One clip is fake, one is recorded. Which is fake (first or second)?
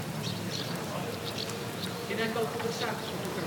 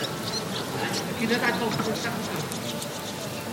first